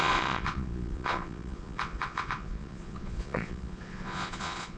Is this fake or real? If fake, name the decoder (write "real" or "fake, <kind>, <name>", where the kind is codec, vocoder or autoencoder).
fake, vocoder, Vocos